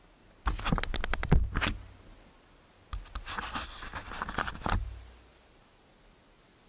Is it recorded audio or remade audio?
recorded